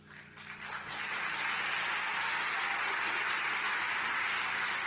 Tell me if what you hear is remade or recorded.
recorded